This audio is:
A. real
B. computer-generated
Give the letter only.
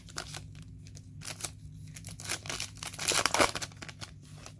A